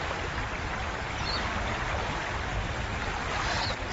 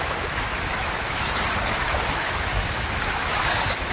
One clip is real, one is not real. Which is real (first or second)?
first